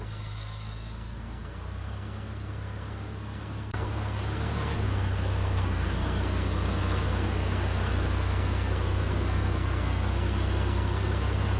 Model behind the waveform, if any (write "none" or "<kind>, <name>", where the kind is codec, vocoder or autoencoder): codec, SNAC